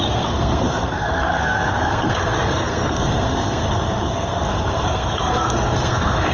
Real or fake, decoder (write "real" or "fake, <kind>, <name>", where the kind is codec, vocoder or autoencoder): fake, codec, SNAC